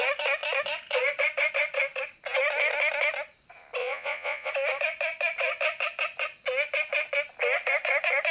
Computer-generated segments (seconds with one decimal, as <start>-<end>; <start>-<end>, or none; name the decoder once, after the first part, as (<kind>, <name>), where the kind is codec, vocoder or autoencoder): 3.8-4.5 (vocoder, Vocos)